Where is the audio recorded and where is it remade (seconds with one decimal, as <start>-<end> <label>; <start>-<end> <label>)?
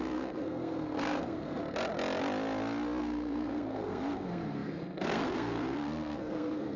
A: 0.0-1.6 remade; 1.6-3.0 recorded; 3.0-6.8 remade